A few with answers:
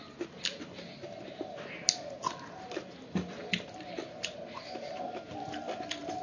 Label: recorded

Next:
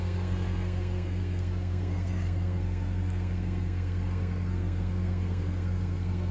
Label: remade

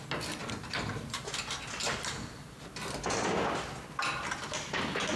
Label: recorded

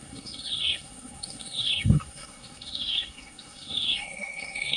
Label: remade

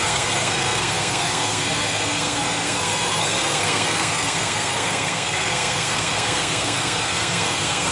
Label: remade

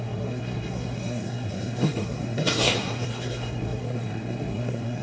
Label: remade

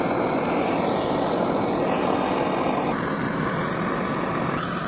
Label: recorded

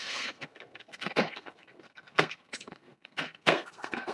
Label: remade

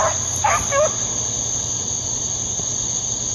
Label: recorded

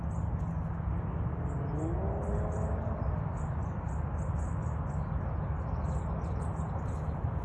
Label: recorded